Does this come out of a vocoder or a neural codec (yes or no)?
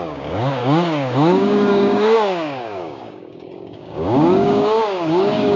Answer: yes